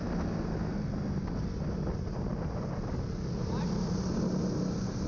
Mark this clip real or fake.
real